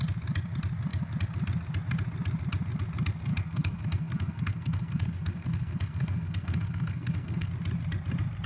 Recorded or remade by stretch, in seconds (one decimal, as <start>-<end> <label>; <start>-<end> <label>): 0.0-3.3 recorded; 3.3-7.5 remade; 7.5-8.5 recorded